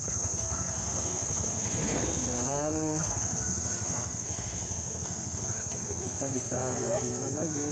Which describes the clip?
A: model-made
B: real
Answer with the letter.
A